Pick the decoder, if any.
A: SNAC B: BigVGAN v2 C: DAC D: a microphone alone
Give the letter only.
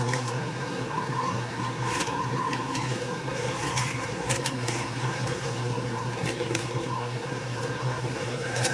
A